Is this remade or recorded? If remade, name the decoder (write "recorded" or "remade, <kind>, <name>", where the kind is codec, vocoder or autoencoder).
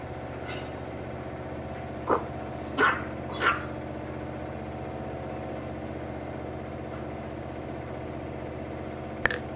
recorded